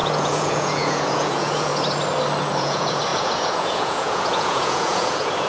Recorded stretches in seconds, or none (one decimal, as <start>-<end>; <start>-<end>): 1.7-2.6